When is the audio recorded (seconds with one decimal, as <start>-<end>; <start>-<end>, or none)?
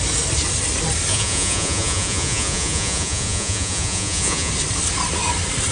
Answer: 0.0-1.1; 4.5-5.7